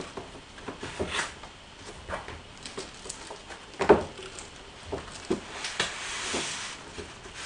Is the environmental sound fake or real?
real